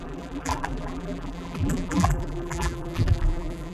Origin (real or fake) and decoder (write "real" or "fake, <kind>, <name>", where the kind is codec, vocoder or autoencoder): fake, vocoder, BigVGAN v2